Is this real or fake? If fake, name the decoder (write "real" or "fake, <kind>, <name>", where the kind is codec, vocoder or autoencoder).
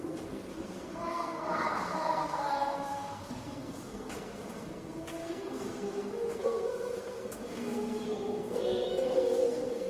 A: fake, codec, SNAC